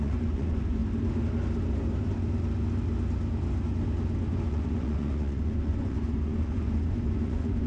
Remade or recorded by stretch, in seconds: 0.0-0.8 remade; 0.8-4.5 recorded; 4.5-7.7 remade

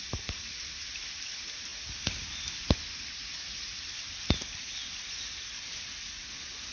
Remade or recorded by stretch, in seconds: 0.0-6.7 recorded